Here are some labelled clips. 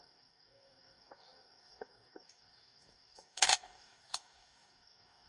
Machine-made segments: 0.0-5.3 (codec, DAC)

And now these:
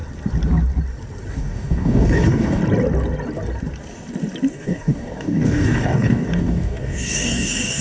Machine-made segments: 1.3-2.6 (codec, DAC); 4.5-7.8

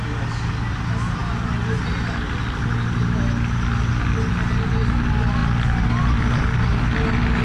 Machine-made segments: none

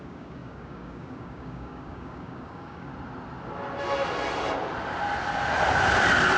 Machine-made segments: 0.0-2.9 (codec, DAC)

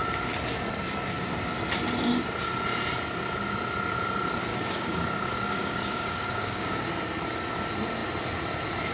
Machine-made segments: 4.5-6.9 (codec, DAC)

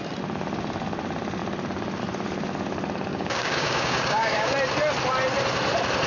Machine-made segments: 3.1-4.5 (codec, DAC)